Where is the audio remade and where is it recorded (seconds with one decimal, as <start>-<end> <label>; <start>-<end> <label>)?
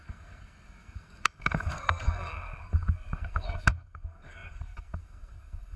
0.0-5.8 remade